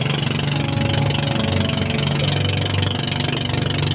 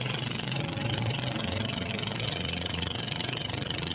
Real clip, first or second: first